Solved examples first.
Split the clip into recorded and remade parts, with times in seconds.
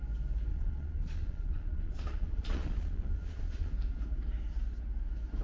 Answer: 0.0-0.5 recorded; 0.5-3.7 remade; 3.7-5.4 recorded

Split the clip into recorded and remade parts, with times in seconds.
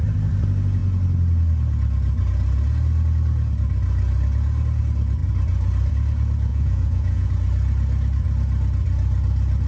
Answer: 0.0-6.5 recorded; 6.5-7.3 remade; 7.3-9.7 recorded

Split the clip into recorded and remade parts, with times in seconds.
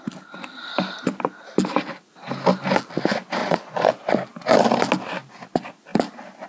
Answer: 0.0-3.4 recorded; 3.4-3.9 remade; 3.9-6.5 recorded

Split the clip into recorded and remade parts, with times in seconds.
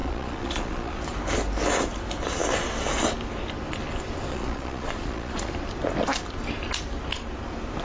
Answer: 0.0-1.0 remade; 1.0-4.3 recorded; 4.3-5.5 remade; 5.5-7.8 recorded